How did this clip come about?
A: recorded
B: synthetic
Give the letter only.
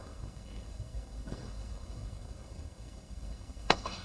B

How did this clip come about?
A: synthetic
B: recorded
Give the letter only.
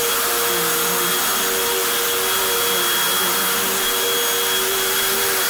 B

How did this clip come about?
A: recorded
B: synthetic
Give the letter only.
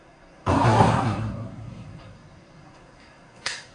B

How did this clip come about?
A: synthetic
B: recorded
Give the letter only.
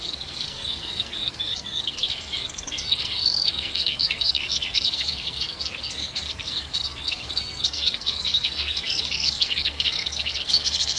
A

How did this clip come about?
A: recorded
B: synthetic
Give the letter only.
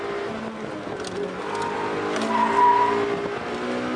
A